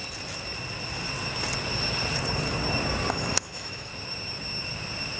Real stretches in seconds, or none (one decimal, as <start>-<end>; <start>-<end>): 0.0-3.1; 3.9-5.2